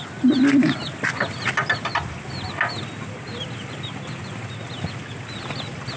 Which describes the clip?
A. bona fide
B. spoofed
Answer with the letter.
A